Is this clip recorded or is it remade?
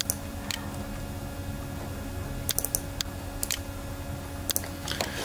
recorded